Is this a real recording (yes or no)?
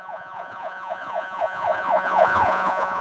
no